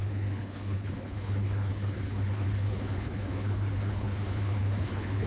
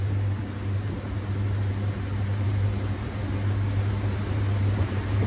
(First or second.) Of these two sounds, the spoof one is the first